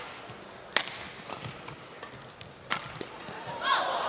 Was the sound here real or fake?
real